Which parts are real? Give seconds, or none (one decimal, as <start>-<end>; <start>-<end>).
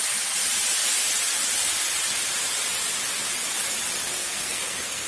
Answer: 0.0-4.2